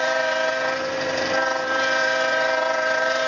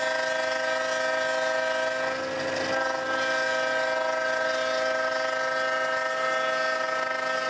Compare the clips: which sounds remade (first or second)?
first